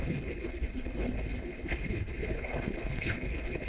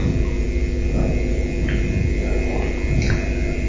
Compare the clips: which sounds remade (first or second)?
first